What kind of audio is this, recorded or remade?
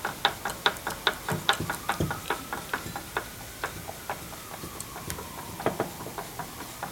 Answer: recorded